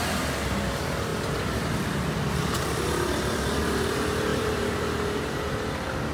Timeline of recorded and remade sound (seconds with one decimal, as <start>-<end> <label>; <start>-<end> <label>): 0.0-4.3 recorded; 4.3-5.5 remade; 5.5-6.1 recorded